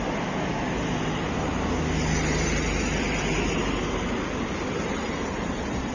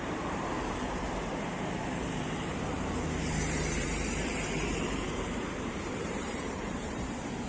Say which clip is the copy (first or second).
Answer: second